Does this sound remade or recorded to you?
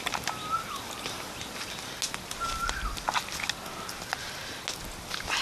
recorded